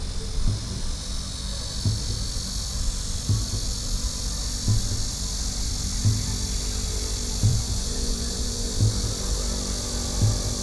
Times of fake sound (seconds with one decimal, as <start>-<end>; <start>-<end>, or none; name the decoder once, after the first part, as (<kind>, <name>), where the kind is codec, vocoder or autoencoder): 7.5-8.7 (vocoder, Vocos)